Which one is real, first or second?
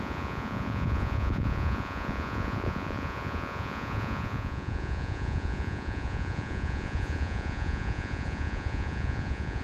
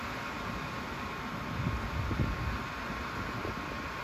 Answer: second